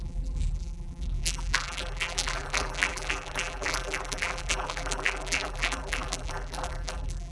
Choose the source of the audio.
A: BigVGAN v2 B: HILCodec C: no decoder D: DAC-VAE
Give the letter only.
A